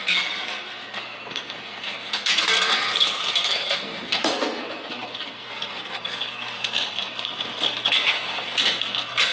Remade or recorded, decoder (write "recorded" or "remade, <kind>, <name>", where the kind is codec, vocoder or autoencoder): remade, codec, SNAC